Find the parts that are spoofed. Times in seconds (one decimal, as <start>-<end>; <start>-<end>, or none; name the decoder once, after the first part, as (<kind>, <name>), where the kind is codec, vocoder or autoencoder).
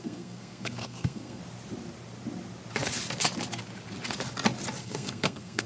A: 0.0-1.4 (codec, SNAC); 4.8-5.7